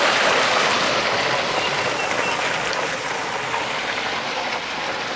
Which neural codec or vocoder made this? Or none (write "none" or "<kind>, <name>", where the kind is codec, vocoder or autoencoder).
none